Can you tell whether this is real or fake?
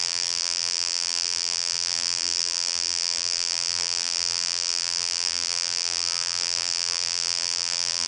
fake